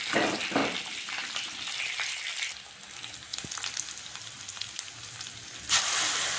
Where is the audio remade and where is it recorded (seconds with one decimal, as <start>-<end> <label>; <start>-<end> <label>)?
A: 0.0-0.6 recorded; 0.6-1.5 remade; 1.5-3.3 recorded; 3.3-4.9 remade; 4.9-6.4 recorded

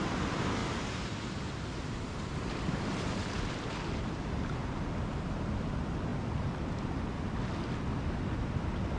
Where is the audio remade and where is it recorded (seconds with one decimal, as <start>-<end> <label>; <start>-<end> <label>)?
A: 0.0-0.6 recorded; 0.6-3.5 remade; 3.5-4.6 recorded; 4.6-5.5 remade; 5.5-9.0 recorded